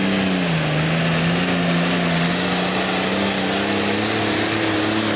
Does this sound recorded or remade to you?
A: recorded